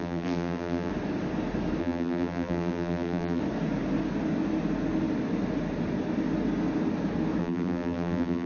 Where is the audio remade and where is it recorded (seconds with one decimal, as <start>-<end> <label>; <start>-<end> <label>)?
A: 0.0-0.9 remade; 0.9-1.8 recorded; 1.8-3.4 remade; 3.4-7.4 recorded; 7.4-8.5 remade